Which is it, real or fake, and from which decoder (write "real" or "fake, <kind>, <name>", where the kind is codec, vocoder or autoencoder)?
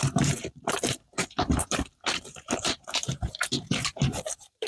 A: fake, vocoder, BigVGAN v2